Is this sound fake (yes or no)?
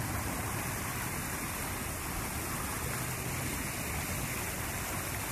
no